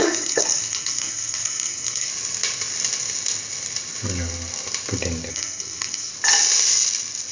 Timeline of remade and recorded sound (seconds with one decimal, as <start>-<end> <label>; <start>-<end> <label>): 0.0-2.1 remade; 2.1-5.3 recorded; 5.3-6.1 remade; 6.1-7.3 recorded